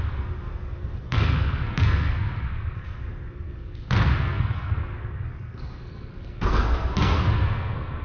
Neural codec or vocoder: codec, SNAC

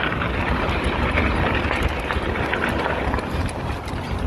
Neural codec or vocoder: none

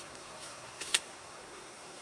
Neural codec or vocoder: codec, SNAC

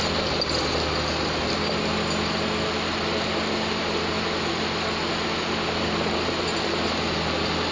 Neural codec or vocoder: none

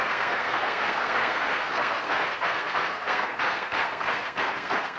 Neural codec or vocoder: codec, SNAC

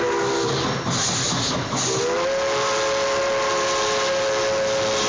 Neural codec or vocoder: none